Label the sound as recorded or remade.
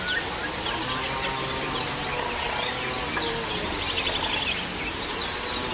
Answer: recorded